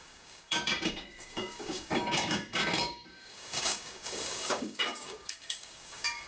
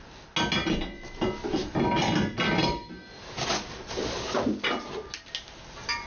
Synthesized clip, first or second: first